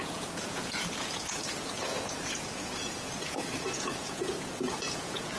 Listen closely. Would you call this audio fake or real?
fake